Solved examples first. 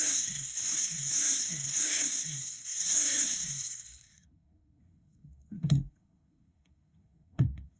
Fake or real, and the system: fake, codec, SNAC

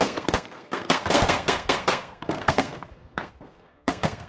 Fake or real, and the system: fake, codec, SNAC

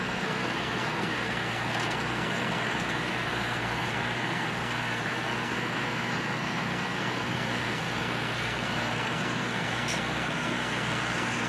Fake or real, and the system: fake, codec, SNAC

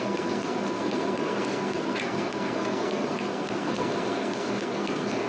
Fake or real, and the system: fake, codec, SNAC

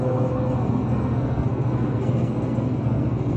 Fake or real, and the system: fake, codec, SNAC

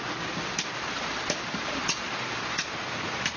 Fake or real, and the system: real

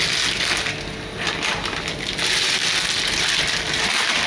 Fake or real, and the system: real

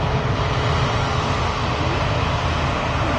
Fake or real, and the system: real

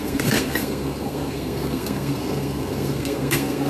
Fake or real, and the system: fake, codec, SNAC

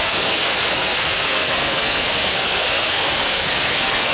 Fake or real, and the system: fake, codec, SNAC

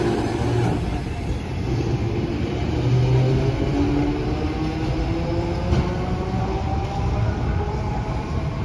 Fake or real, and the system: real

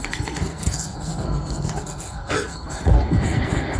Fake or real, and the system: fake, codec, SNAC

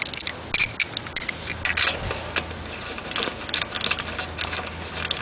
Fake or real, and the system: real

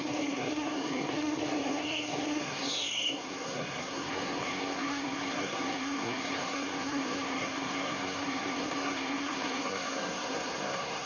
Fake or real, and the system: fake, codec, SNAC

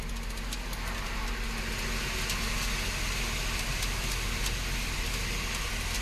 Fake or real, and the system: real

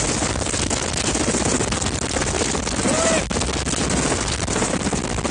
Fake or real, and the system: real